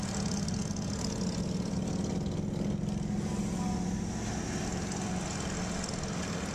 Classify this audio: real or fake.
real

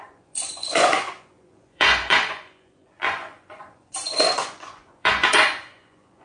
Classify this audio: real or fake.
fake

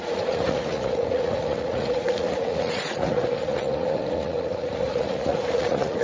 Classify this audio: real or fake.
fake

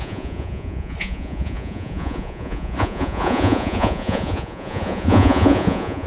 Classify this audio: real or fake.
fake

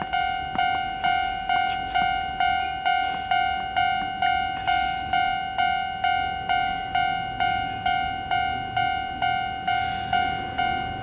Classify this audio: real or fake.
real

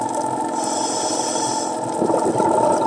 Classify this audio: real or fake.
real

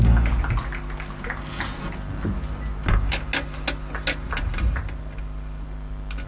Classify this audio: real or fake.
real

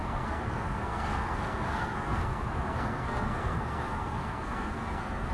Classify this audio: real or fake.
fake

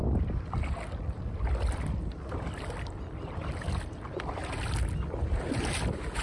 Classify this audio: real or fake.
real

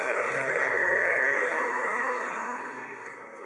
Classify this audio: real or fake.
fake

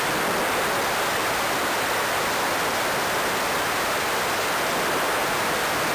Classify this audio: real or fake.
real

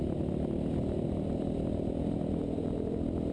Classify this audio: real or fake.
real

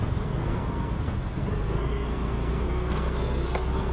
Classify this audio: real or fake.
fake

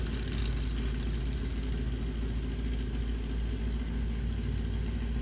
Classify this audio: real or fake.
real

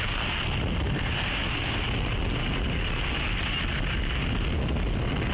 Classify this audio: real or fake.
real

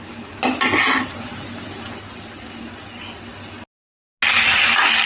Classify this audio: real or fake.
real